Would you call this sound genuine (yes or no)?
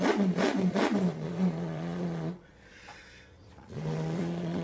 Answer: no